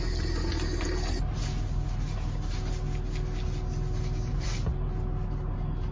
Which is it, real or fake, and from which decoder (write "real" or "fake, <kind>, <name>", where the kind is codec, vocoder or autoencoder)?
real